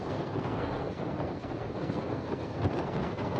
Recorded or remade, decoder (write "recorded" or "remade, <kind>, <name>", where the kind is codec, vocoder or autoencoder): remade, codec, SNAC